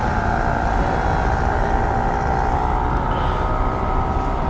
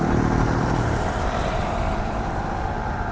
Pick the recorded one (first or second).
first